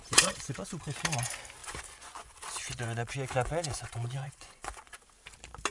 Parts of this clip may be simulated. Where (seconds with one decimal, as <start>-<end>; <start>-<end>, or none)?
0.0-0.8; 1.6-5.0